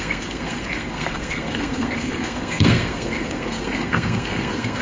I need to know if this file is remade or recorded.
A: remade